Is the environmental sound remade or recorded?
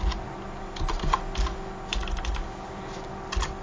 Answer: recorded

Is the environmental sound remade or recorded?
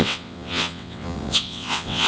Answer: remade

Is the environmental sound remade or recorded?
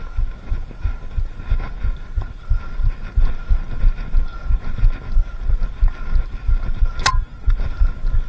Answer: recorded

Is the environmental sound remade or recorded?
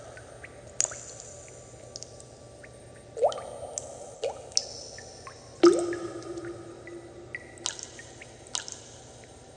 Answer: recorded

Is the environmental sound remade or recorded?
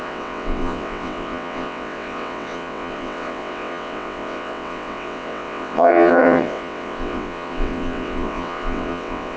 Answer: remade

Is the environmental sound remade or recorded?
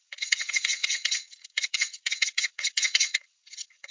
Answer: remade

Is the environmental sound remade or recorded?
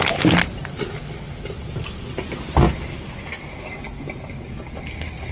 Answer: recorded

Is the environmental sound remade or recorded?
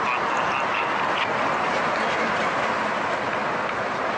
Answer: recorded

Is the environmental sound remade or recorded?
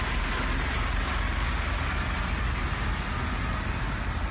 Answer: recorded